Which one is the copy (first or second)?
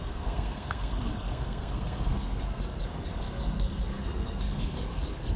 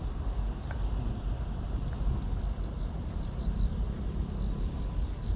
first